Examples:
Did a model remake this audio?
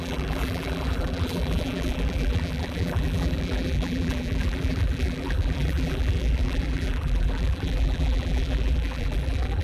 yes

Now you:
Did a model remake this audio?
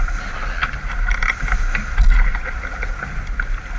no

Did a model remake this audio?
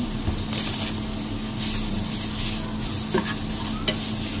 no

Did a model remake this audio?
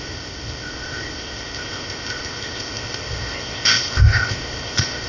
yes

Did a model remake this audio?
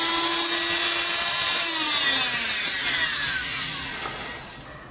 no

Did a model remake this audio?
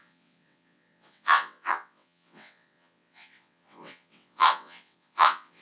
yes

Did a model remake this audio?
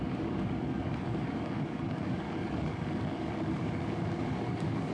yes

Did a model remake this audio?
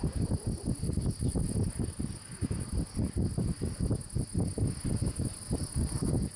no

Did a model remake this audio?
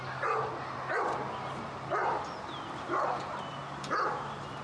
no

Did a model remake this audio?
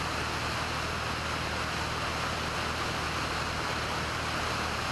no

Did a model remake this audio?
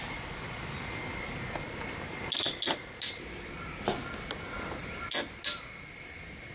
no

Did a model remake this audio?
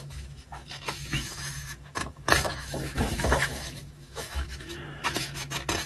yes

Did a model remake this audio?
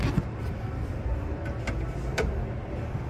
yes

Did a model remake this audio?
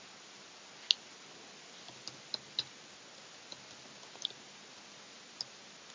no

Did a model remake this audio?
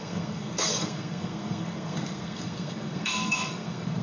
yes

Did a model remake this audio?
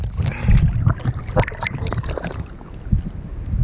no